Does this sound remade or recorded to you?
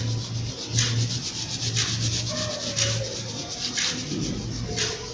recorded